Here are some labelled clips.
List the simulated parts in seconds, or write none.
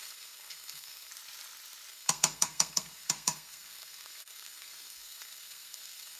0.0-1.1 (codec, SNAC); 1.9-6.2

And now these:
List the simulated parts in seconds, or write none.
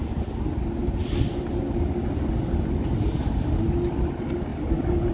4.5-5.1 (vocoder, BigVGAN v2)